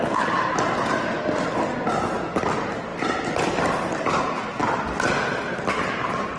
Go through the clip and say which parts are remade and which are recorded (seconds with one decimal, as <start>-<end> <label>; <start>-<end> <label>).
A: 0.0-6.4 recorded